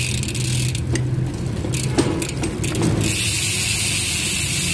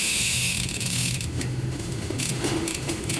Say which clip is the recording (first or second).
first